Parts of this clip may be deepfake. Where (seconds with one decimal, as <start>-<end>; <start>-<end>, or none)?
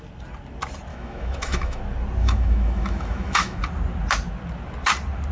0.9-1.8; 2.2-3.6